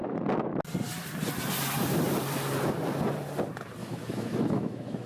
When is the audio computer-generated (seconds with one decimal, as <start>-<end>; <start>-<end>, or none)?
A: 3.8-5.1